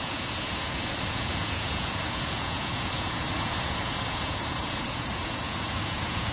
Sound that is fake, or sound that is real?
fake